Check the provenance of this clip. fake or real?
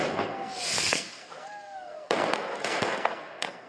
fake